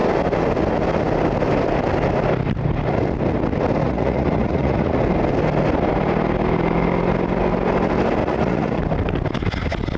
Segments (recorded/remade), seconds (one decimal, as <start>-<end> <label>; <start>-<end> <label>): 0.0-3.8 recorded; 3.8-5.0 remade; 5.0-8.2 recorded; 8.2-8.8 remade; 8.8-10.0 recorded